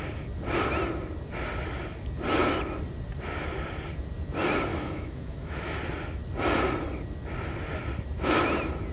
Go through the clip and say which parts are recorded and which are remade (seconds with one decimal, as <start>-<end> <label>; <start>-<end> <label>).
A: 0.0-4.7 recorded; 4.7-5.8 remade; 5.8-8.9 recorded